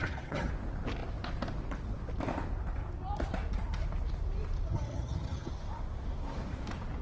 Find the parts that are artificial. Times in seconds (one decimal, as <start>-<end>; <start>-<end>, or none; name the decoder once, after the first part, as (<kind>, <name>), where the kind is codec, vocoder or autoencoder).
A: 0.0-0.5 (vocoder, HiFi-GAN); 4.7-5.5